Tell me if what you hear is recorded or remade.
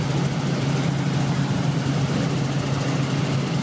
recorded